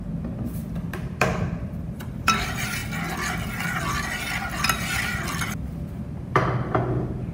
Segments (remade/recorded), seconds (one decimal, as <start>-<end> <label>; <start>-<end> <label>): 0.0-7.3 recorded

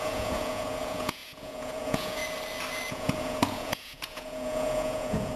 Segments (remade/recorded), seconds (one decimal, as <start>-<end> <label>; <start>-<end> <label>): 0.0-2.2 remade; 2.2-2.9 recorded; 2.9-5.4 remade